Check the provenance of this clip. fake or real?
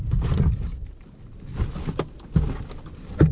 real